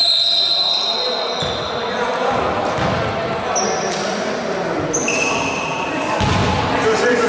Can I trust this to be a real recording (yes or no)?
yes